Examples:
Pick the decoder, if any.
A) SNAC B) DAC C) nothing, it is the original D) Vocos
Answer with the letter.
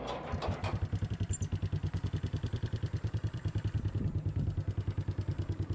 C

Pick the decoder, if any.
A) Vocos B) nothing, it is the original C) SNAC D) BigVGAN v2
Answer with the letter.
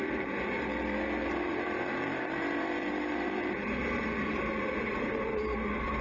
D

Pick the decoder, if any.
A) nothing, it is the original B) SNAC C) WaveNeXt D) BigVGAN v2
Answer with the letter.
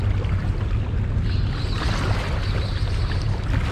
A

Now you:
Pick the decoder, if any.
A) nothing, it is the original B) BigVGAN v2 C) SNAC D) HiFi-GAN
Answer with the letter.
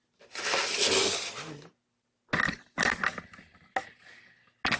A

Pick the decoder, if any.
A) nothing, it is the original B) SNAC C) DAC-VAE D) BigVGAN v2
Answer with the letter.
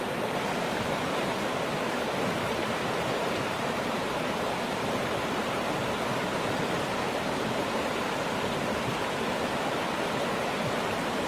D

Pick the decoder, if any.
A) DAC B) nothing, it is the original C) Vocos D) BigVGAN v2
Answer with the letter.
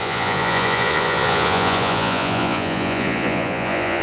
C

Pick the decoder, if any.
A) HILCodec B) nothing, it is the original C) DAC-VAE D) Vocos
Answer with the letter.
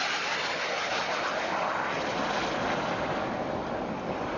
B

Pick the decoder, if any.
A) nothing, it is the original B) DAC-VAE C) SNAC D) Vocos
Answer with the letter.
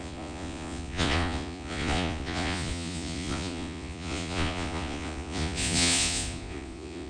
D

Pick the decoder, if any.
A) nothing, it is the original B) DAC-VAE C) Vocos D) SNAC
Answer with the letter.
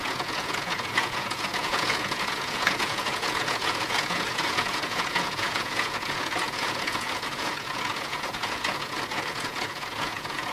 C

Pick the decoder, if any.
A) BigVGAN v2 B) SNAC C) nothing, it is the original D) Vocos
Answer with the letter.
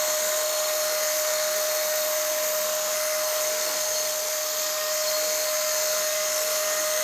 B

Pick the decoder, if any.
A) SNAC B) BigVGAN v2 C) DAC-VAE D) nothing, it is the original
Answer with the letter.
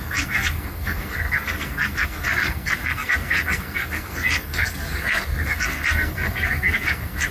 A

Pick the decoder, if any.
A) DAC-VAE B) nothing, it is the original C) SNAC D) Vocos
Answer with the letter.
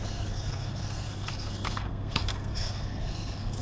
C